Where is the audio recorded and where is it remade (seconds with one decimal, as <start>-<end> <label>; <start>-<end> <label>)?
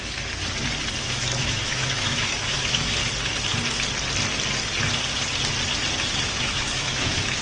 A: 0.0-0.4 remade; 0.4-1.0 recorded; 1.0-3.0 remade; 3.0-6.2 recorded; 6.2-7.4 remade